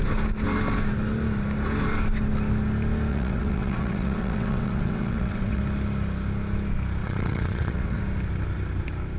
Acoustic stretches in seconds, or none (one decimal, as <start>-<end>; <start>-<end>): 0.0-3.1; 5.6-7.0; 8.0-9.2